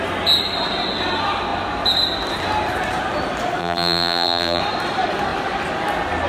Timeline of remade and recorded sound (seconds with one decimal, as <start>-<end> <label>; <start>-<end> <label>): 0.0-3.6 recorded; 3.6-4.6 remade; 4.6-6.3 recorded